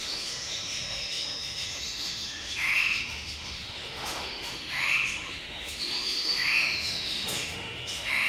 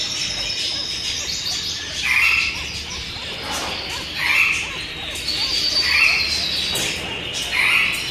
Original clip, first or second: second